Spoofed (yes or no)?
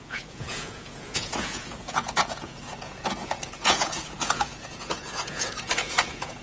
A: yes